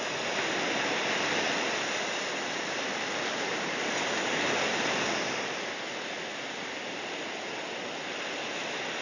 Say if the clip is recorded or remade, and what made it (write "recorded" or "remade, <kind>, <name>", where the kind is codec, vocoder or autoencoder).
recorded